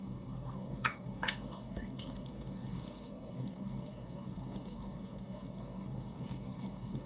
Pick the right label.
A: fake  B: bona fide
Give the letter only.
A